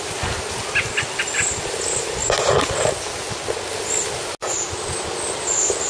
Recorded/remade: recorded